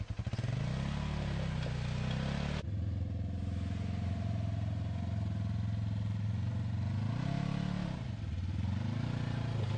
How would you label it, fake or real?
real